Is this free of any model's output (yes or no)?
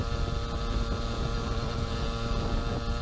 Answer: yes